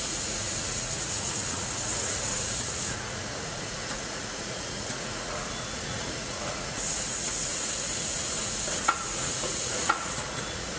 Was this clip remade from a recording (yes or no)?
yes